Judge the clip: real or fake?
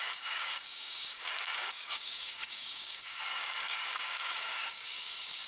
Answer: fake